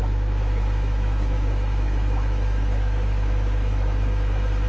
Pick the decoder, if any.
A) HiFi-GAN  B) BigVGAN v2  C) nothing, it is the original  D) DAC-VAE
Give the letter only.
D